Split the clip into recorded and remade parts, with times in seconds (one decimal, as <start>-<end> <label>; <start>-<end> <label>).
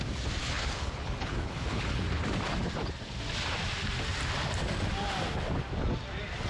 0.0-0.4 recorded; 0.4-2.0 remade; 2.0-6.5 recorded